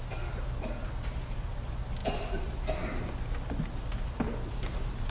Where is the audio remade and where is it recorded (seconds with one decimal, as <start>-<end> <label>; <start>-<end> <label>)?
0.0-5.1 recorded